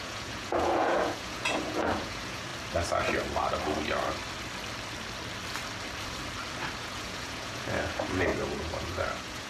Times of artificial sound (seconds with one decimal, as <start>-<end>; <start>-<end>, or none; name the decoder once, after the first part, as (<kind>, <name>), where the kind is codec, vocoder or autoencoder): 0.0-2.5 (vocoder, Vocos); 6.8-9.5